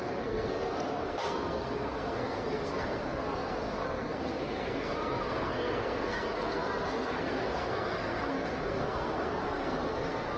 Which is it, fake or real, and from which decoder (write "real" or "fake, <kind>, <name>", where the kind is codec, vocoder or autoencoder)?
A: fake, codec, SNAC